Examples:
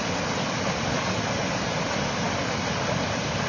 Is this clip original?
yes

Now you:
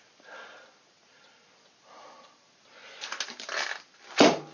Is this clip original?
yes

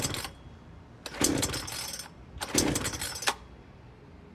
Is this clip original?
yes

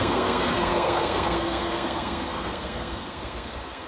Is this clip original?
no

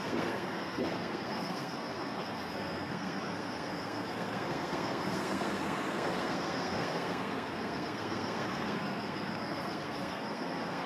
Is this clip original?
no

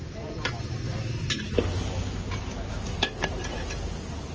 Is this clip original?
yes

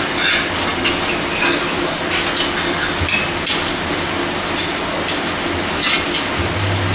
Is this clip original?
yes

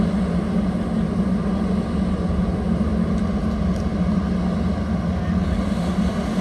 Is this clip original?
yes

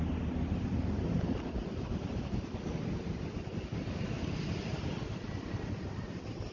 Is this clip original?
yes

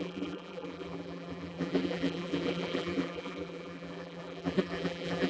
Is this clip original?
no